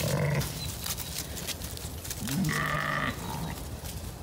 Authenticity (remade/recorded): recorded